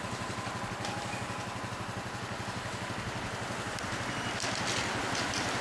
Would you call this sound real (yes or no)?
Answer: yes